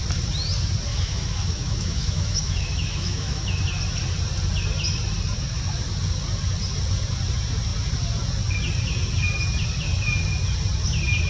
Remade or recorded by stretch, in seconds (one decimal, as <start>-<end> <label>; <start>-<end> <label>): 0.0-0.9 recorded; 0.9-3.6 remade; 3.6-11.3 recorded